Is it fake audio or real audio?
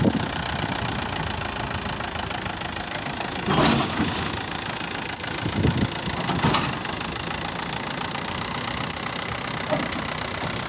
real